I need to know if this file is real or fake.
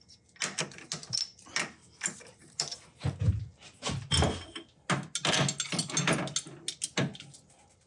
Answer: real